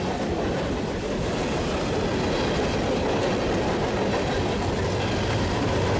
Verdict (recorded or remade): recorded